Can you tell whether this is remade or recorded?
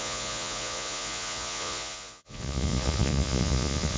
remade